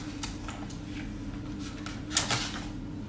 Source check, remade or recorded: recorded